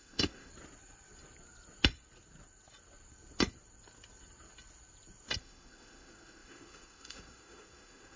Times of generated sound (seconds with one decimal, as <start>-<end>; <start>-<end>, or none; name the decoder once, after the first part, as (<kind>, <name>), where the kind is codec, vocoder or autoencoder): 0.0-0.5 (autoencoder, DAC-VAE); 5.4-8.2